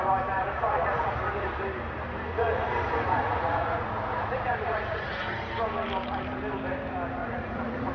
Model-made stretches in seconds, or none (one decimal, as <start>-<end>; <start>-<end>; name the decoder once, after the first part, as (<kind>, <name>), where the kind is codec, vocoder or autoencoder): 0.4-1.0 (vocoder, Vocos); 2.3-5.5; 7.2-7.9